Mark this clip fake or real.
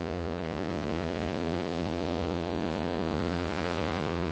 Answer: fake